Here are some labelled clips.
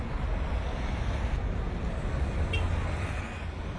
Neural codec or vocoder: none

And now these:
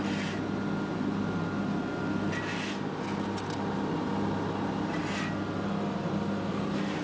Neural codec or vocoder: none